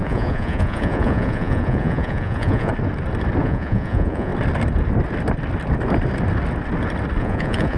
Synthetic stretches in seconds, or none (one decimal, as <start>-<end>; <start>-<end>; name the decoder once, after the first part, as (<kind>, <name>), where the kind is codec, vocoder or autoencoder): 0.0-2.7 (vocoder, Vocos); 3.4-4.3; 7.2-7.8